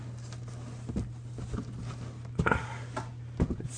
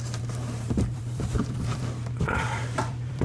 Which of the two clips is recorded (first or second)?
first